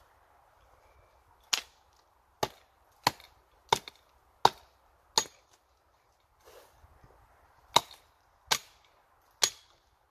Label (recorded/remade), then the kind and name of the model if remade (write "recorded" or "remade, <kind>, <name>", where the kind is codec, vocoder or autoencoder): recorded